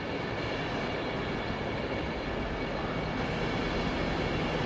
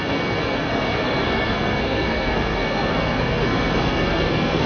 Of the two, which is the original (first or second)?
first